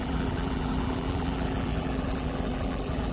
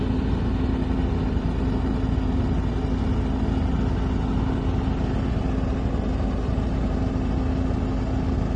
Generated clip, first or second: first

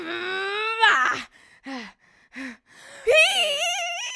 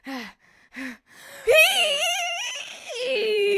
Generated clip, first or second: second